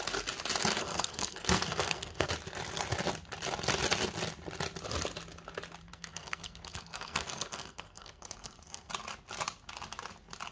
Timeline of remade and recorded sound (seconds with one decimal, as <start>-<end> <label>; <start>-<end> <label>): 0.0-0.8 recorded; 0.8-2.3 remade; 2.3-5.9 recorded; 5.9-8.9 remade; 8.9-10.5 recorded